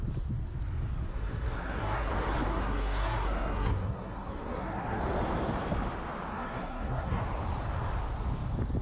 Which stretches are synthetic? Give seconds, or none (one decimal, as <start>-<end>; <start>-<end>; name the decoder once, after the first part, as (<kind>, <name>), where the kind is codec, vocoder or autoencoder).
1.1-2.1 (codec, SNAC); 2.5-5.0; 6.3-7.2